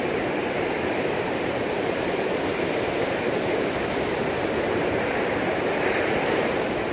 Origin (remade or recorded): remade